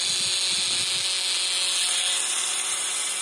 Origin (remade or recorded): recorded